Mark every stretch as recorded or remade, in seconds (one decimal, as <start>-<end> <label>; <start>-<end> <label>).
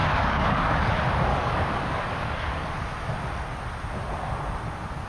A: 0.0-0.9 remade; 0.9-1.3 recorded; 1.3-2.7 remade; 2.7-5.1 recorded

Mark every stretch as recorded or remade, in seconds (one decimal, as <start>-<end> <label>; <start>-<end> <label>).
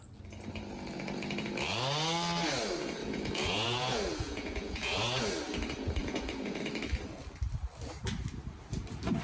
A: 0.0-3.0 recorded; 3.0-5.2 remade; 5.2-6.0 recorded; 6.0-6.6 remade; 6.6-9.2 recorded